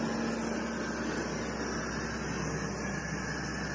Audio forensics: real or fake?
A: real